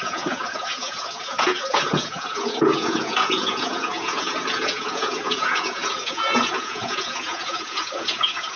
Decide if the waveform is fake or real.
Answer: fake